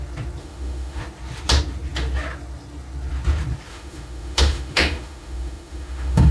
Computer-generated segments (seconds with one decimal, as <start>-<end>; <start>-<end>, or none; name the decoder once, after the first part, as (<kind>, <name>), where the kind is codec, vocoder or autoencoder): 0.4-1.0 (autoencoder, DAC-VAE); 3.7-6.3